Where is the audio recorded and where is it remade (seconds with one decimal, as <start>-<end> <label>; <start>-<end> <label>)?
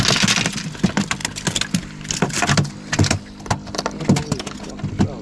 0.0-5.2 recorded